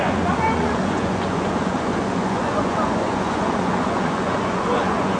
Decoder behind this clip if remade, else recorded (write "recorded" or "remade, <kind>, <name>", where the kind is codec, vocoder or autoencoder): remade, vocoder, Vocos